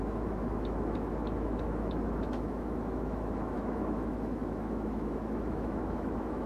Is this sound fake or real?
fake